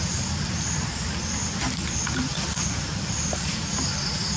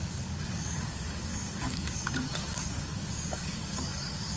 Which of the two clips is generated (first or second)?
second